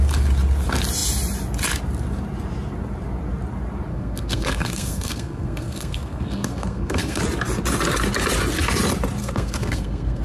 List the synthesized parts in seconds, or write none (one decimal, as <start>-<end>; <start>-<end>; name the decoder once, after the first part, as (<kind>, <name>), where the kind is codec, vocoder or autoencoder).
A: 3.9-7.2 (codec, SNAC); 9.2-10.2